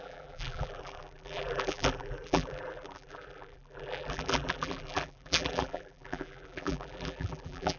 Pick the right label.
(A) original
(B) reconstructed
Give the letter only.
B